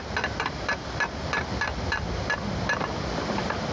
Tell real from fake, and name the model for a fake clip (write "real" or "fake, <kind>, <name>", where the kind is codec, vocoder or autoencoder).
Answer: real